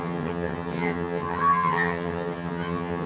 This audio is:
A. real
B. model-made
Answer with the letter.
B